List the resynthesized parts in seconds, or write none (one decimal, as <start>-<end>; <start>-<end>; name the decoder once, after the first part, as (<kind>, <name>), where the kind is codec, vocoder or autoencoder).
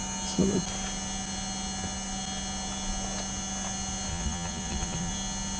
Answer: 4.1-5.1 (vocoder, Vocos)